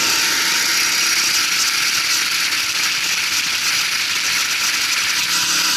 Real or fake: real